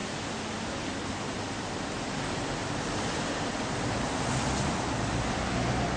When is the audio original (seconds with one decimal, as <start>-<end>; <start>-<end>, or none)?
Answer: 0.0-2.6; 3.3-6.0